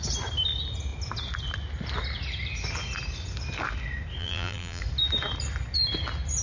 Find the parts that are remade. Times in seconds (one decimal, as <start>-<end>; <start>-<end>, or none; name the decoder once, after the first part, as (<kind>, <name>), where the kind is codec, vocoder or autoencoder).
4.2-4.8 (vocoder, BigVGAN v2)